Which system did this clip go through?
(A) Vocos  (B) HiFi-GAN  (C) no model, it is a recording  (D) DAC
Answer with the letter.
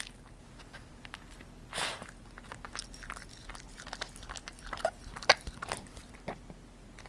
C